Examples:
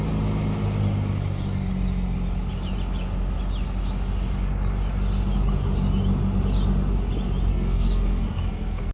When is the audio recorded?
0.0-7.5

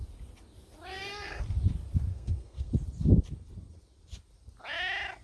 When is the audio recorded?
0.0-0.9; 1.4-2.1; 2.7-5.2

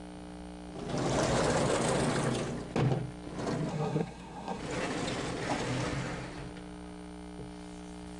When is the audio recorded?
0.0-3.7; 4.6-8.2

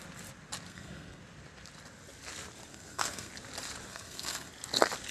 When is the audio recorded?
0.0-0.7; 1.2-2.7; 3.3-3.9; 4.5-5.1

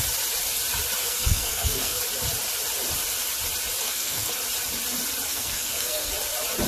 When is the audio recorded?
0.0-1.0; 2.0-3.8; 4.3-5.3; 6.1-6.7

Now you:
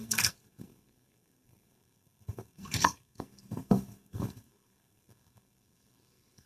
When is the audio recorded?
none

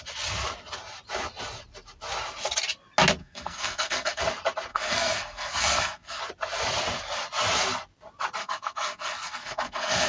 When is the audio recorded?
0.0-3.2; 4.2-4.7; 6.2-8.4

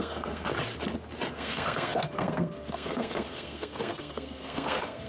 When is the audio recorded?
0.5-1.3